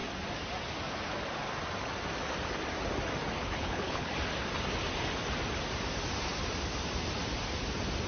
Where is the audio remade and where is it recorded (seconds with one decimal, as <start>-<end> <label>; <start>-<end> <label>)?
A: 0.0-3.4 recorded; 3.4-4.1 remade; 4.1-8.1 recorded